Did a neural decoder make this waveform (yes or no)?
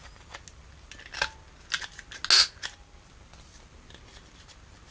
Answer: no